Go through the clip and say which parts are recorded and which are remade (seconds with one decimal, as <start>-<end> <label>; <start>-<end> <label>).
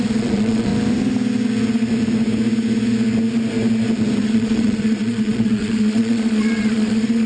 0.0-0.7 remade; 0.7-4.2 recorded; 4.2-7.3 remade